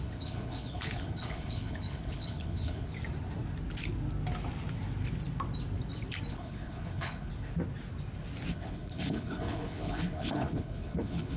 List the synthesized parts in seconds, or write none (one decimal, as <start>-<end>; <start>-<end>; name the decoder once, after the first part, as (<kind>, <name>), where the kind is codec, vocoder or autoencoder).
0.0-2.9 (codec, HILCodec); 6.3-7.3; 8.5-11.4